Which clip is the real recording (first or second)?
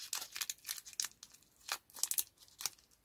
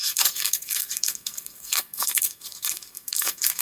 first